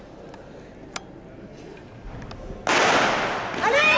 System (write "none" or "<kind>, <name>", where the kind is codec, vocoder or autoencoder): none